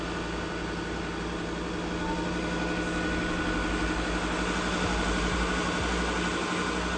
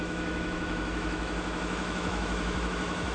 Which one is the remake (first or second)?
second